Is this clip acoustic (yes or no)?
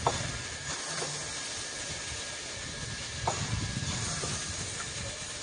yes